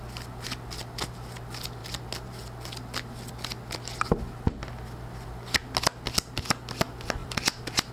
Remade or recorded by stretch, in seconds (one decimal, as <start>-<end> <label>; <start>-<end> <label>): 0.0-7.2 recorded; 7.2-7.9 remade